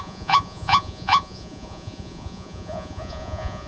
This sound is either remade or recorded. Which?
remade